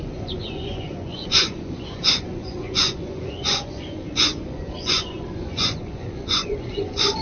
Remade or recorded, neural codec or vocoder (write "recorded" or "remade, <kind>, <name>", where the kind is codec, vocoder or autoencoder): remade, vocoder, Vocos